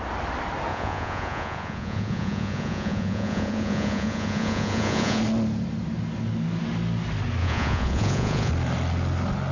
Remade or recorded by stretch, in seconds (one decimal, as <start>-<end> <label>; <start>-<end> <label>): 0.0-0.7 recorded; 0.7-5.2 remade; 5.2-7.4 recorded; 7.4-8.5 remade; 8.5-9.5 recorded